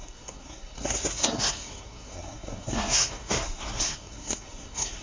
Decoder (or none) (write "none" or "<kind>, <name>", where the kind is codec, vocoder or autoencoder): codec, SNAC